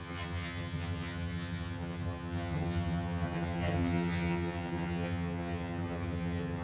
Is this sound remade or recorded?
remade